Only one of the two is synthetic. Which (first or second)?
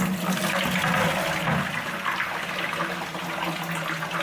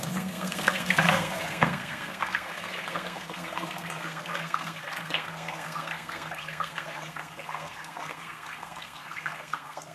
second